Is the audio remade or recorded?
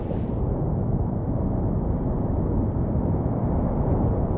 recorded